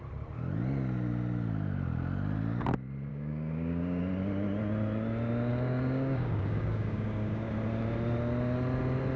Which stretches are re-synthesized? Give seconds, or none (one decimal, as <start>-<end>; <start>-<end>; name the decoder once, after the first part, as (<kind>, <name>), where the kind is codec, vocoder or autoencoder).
3.1-4.0 (codec, DAC); 5.5-7.5